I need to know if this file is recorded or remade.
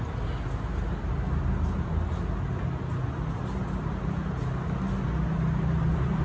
recorded